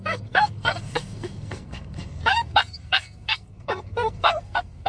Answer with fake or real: fake